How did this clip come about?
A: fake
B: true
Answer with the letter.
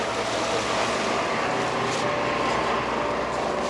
B